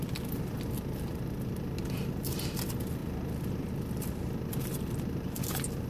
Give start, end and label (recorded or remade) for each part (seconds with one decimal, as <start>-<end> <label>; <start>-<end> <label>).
0.0-5.9 recorded